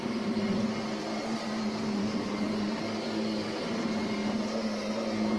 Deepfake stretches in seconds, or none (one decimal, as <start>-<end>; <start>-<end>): 2.0-3.6

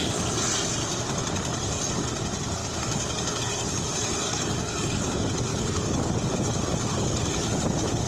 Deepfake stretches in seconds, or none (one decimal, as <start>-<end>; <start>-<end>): 2.6-3.4; 4.3-5.1; 5.5-6.1